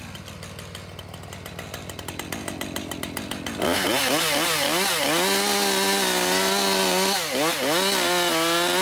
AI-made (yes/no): no